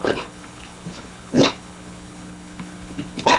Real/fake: fake